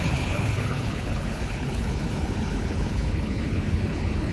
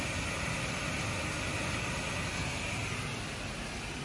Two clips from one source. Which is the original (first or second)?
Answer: second